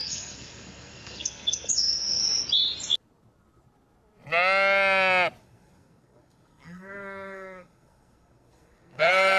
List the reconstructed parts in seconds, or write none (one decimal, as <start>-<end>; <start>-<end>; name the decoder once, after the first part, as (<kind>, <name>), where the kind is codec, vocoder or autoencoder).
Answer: 0.0-2.2 (codec, SNAC); 5.4-9.4